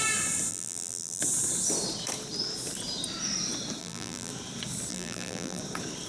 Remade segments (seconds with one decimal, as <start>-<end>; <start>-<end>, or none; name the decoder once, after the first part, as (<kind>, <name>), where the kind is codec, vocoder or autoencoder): 0.5-1.2 (vocoder, BigVGAN v2); 3.8-4.3; 4.9-5.6